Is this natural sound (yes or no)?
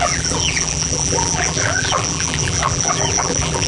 no